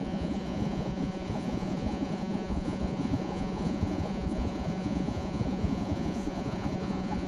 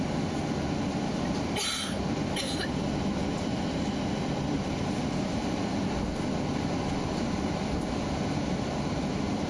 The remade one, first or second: first